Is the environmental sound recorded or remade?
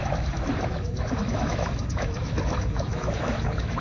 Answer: remade